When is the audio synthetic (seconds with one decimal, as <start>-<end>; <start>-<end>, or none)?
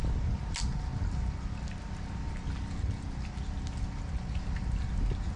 none